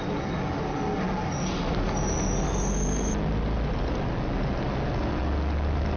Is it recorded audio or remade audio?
recorded